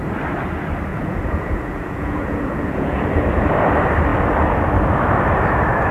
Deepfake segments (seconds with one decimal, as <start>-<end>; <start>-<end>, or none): 0.9-3.1